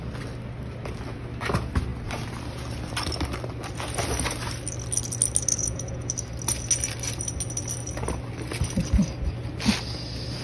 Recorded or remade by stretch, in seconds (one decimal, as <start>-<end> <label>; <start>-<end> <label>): 0.0-5.5 recorded; 5.5-6.1 remade; 6.1-10.4 recorded